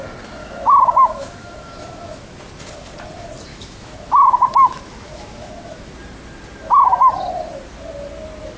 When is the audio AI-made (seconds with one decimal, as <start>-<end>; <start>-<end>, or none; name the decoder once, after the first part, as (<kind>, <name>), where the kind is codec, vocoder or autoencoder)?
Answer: 0.4-2.4 (autoencoder, DAC-VAE); 3.5-5.9